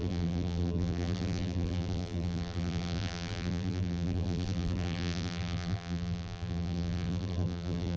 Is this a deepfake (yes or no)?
yes